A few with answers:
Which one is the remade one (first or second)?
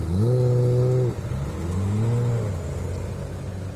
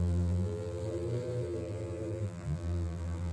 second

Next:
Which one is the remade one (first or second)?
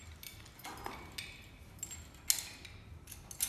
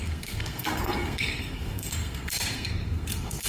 second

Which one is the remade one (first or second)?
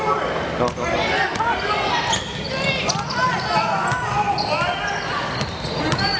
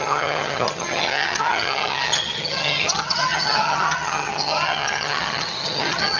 second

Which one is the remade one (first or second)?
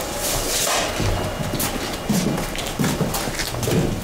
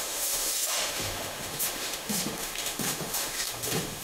second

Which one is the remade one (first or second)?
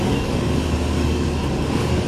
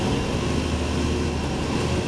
first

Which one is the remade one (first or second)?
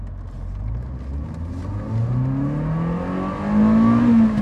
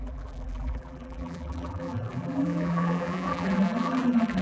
second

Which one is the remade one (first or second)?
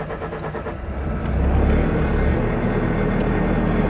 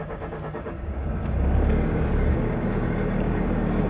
second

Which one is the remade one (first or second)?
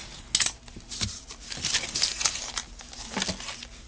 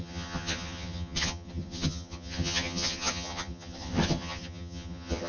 second